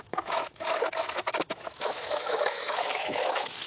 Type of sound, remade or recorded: remade